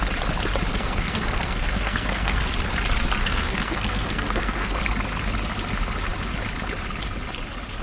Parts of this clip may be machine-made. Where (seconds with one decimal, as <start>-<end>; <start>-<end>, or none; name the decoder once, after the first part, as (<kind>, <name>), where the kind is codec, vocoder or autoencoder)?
0.7-2.5 (codec, SNAC); 3.2-4.8